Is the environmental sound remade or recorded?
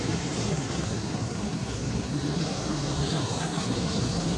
remade